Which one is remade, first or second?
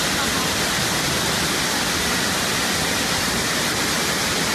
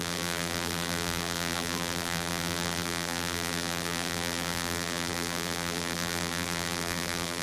second